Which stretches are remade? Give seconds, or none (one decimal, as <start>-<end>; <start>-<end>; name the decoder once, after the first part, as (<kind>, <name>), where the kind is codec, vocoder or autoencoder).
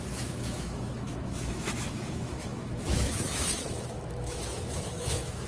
0.0-5.5 (autoencoder, DAC-VAE)